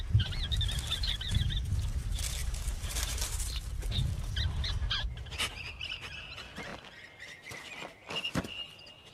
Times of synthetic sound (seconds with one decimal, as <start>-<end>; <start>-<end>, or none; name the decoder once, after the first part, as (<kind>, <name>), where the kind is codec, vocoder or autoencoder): 2.4-3.2 (vocoder, BigVGAN v2)